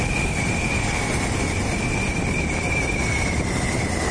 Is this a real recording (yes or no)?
yes